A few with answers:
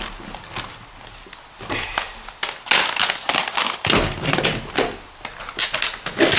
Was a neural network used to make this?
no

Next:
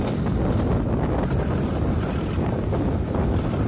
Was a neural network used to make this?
no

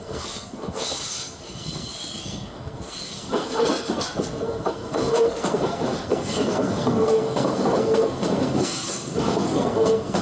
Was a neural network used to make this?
yes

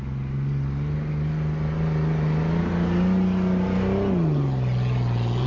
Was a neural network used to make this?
no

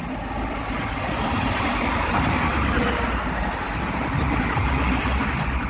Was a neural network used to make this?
no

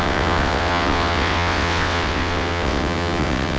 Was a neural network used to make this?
yes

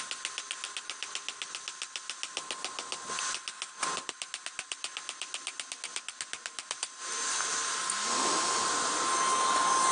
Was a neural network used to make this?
no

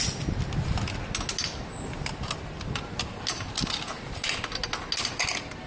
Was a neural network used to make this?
no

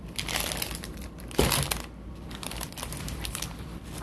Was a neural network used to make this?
yes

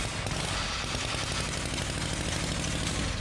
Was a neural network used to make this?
no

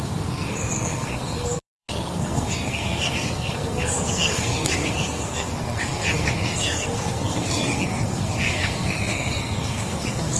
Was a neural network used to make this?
yes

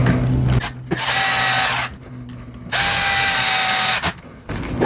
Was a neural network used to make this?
no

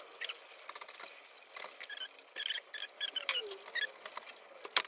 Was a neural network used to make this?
no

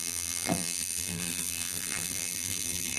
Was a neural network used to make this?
yes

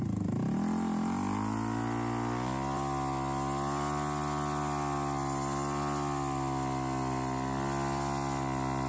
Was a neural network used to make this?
no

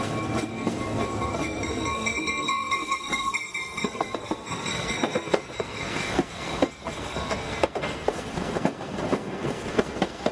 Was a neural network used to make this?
yes